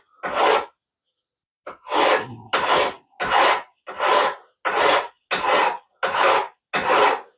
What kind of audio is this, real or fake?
real